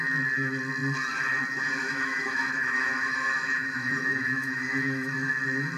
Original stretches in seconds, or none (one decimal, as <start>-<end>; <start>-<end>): 0.0-1.8; 5.3-5.8